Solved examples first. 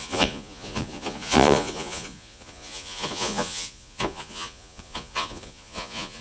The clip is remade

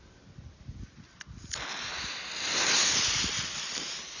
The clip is recorded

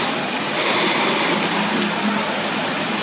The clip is recorded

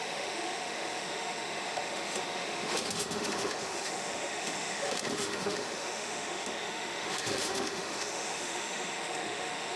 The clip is remade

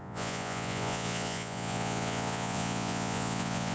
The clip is remade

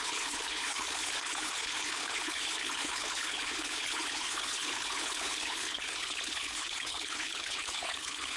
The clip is remade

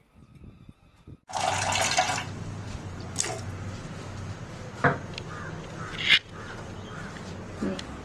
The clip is recorded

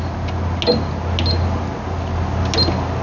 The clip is recorded